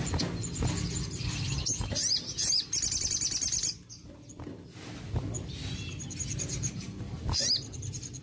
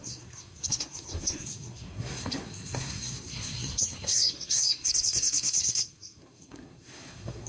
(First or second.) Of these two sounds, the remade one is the second